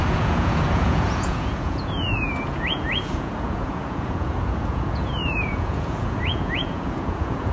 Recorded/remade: remade